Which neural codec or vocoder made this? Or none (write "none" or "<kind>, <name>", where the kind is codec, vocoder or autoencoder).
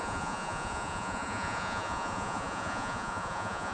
vocoder, Vocos